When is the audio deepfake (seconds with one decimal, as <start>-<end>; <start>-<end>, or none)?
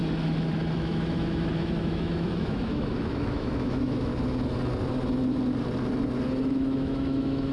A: 0.7-4.1; 6.5-7.5